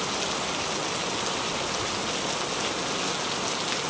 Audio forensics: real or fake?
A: real